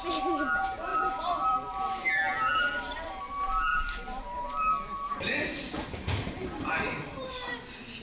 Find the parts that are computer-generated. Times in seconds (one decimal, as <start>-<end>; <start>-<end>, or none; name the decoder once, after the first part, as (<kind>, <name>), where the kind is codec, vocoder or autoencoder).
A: 0.9-3.2 (vocoder, BigVGAN v2); 3.7-7.5